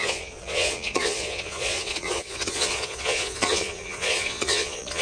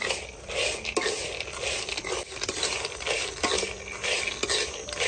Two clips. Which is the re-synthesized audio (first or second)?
first